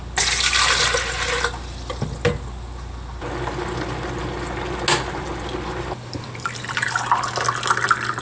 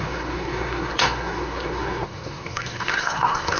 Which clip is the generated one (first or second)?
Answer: second